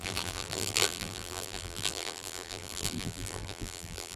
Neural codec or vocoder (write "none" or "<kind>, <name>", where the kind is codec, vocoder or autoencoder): vocoder, BigVGAN v2